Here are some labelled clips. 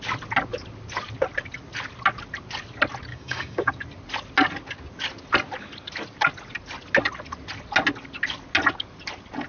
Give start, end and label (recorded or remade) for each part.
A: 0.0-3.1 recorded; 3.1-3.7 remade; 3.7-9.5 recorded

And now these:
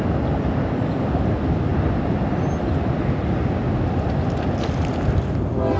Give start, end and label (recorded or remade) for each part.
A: 0.0-5.8 recorded

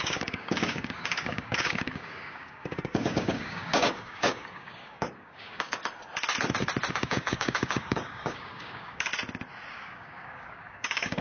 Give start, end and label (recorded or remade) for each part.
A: 0.0-5.8 remade; 5.8-6.9 recorded; 6.9-9.1 remade; 9.1-9.7 recorded; 9.7-11.2 remade

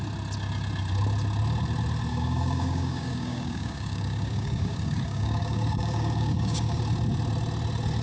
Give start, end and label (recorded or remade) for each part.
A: 0.0-2.1 recorded; 2.1-6.8 remade; 6.8-8.0 recorded